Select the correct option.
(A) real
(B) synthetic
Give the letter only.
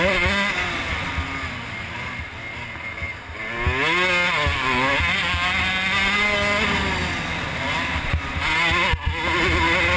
A